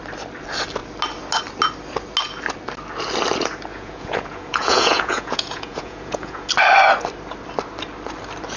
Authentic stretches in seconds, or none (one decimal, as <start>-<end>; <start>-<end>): 0.0-3.7; 6.5-8.6